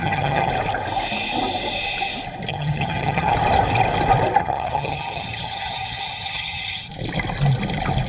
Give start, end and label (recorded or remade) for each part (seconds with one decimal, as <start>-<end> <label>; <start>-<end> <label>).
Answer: 0.0-0.5 remade; 0.5-2.5 recorded; 2.5-3.3 remade; 3.3-4.4 recorded; 4.4-6.9 remade; 6.9-8.1 recorded